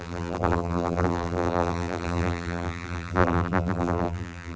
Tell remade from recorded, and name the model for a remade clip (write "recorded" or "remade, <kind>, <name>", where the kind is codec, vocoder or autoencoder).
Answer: remade, vocoder, BigVGAN v2